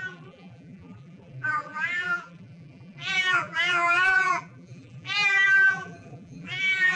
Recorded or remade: remade